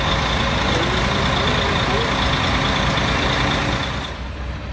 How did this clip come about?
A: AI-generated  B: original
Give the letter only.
B